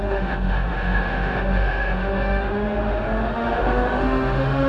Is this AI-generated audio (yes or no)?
yes